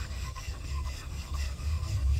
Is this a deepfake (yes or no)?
yes